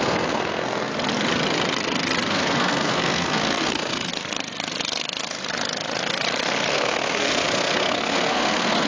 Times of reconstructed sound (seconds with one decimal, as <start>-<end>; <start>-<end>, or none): 0.0-0.9; 2.3-4.1; 6.7-8.9